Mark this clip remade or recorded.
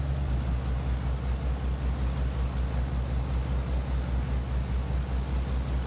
recorded